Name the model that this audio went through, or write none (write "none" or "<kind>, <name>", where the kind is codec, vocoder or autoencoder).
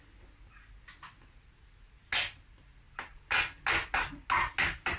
none